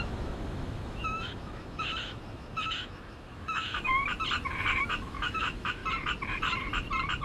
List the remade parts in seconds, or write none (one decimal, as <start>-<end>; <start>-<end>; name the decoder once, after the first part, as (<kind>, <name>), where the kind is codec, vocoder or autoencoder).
0.0-3.9 (autoencoder, DAC-VAE); 4.9-5.8